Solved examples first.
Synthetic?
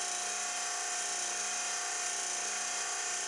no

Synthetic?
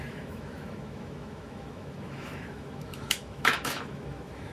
yes